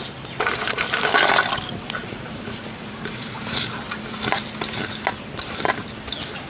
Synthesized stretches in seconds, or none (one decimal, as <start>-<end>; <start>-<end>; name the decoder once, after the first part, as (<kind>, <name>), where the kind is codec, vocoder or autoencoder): 2.0-3.6 (vocoder, BigVGAN v2)